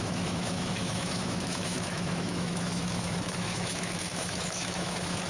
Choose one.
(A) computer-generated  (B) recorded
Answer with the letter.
A